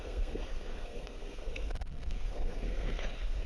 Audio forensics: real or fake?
fake